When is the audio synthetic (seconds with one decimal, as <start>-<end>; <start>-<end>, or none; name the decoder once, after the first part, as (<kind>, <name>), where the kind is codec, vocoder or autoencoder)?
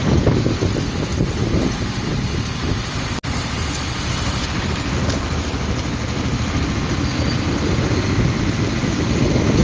none